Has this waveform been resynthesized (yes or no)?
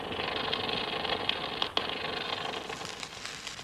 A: no